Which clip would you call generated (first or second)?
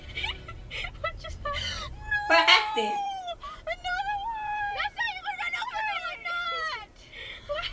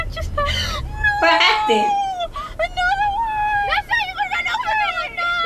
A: first